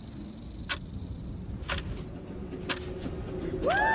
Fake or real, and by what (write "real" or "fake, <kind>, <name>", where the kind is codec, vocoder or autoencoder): real